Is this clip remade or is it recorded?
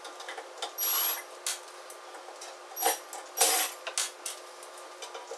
recorded